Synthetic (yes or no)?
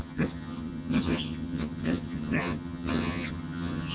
yes